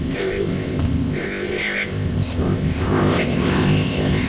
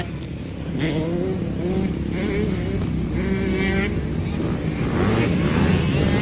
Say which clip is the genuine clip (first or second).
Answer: second